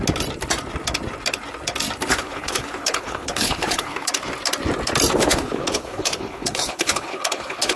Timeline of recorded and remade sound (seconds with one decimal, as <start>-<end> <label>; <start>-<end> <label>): 0.0-2.1 recorded; 2.1-4.1 remade; 4.1-5.2 recorded; 5.2-7.8 remade